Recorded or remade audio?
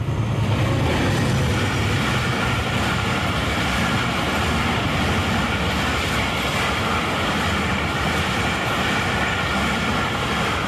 recorded